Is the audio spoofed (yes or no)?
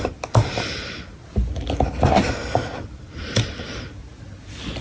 no